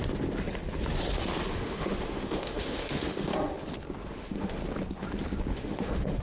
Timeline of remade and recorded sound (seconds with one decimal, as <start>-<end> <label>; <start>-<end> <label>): 0.0-1.5 recorded; 1.5-3.3 remade; 3.3-4.1 recorded; 4.1-4.6 remade; 4.6-5.5 recorded; 5.5-6.2 remade